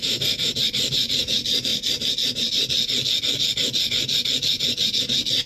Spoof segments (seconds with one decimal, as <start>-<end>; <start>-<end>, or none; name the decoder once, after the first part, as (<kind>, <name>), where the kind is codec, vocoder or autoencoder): 0.0-0.5 (codec, SNAC)